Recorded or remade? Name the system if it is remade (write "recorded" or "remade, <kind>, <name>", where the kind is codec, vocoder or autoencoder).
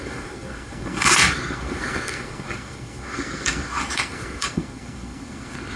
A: remade, codec, SNAC